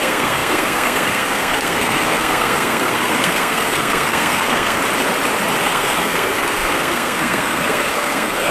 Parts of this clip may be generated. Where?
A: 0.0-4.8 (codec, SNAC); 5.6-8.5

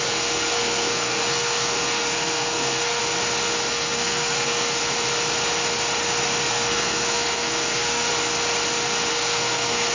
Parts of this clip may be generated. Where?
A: 0.0-3.0 (codec, SNAC); 3.7-4.8; 6.5-8.1; 9.1-9.9

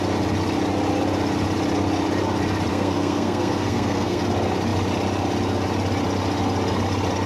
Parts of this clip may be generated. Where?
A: 2.7-4.2 (codec, SNAC)

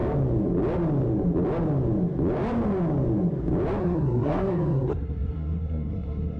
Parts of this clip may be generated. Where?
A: 3.8-6.4 (codec, SNAC)

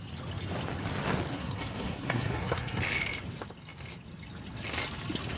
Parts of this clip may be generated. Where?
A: 1.3-2.8 (codec, SNAC)